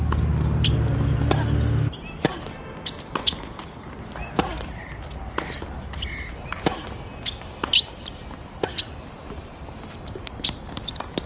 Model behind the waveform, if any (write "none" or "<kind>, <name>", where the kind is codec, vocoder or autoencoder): none